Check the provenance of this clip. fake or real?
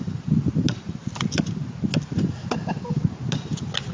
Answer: real